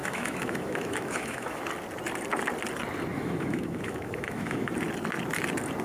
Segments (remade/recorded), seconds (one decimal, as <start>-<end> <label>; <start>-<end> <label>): 0.0-1.6 remade; 1.6-3.1 recorded; 3.1-4.7 remade; 4.7-5.8 recorded